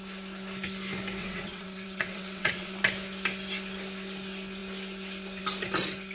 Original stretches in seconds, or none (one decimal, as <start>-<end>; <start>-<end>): 0.0-1.2; 2.8-6.1

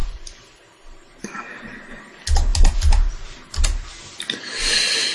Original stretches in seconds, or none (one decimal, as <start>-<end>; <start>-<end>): 1.9-5.1